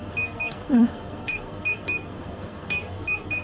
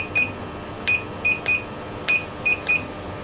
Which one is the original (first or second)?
second